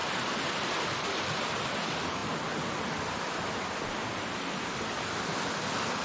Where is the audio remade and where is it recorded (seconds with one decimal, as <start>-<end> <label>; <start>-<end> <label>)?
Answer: 0.0-6.0 recorded